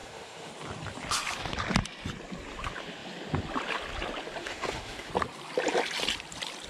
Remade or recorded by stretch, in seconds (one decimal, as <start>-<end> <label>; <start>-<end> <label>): 0.0-0.5 remade; 0.5-4.4 recorded; 4.4-5.1 remade; 5.1-6.7 recorded